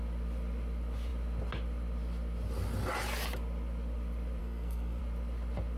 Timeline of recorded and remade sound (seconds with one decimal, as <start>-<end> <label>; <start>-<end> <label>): 0.0-4.4 recorded; 4.4-5.0 remade; 5.0-5.8 recorded